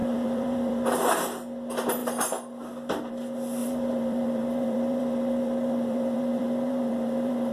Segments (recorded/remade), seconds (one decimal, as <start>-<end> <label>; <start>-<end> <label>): 0.0-1.0 remade; 1.0-3.6 recorded; 3.6-7.5 remade